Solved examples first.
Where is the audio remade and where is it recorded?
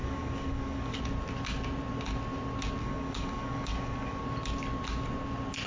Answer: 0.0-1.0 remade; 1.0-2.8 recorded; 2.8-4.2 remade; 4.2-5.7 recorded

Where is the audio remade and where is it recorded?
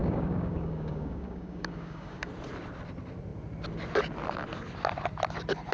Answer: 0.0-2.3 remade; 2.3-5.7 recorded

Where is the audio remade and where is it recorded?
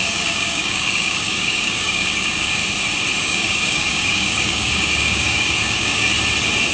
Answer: 0.0-2.6 remade; 2.6-3.2 recorded; 3.2-6.1 remade; 6.1-6.7 recorded